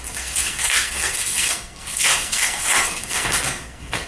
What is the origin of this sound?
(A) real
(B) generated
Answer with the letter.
B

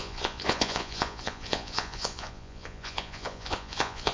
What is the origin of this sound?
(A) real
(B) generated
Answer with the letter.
B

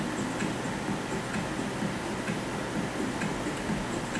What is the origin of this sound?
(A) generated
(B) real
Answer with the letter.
B